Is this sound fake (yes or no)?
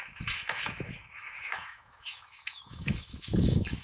yes